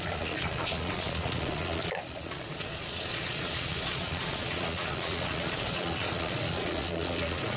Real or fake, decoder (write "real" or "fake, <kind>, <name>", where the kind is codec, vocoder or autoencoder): fake, vocoder, Vocos